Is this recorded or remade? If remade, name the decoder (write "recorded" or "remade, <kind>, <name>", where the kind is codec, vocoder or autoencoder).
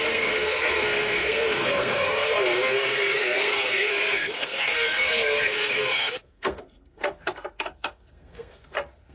remade, codec, SNAC